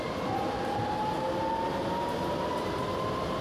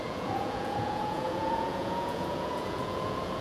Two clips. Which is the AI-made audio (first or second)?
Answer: second